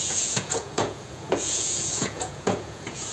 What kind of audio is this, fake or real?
fake